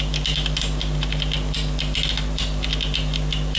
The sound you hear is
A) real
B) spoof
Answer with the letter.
A